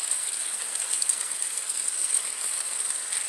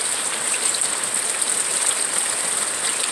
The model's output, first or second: first